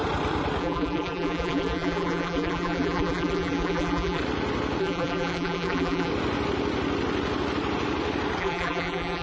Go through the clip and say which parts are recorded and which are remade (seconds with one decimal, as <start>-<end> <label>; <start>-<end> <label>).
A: 0.0-0.6 recorded; 0.6-4.2 remade; 4.2-4.8 recorded; 4.8-6.1 remade; 6.1-8.4 recorded; 8.4-9.2 remade